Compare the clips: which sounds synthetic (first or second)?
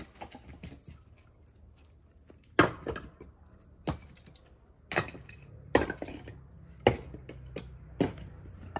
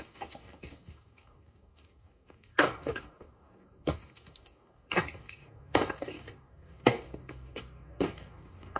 second